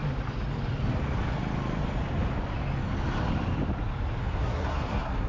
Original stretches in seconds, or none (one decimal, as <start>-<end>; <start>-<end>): 0.0-4.2